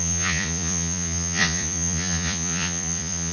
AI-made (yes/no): yes